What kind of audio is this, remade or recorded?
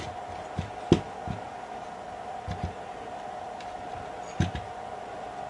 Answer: recorded